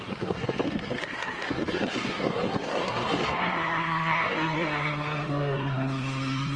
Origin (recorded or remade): remade